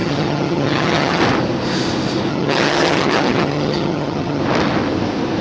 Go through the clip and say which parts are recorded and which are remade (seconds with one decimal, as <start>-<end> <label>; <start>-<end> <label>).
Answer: 0.0-1.2 remade; 1.2-2.3 recorded; 2.3-4.4 remade; 4.4-5.4 recorded